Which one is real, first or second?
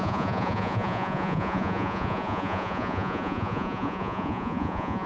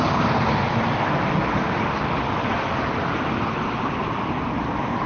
second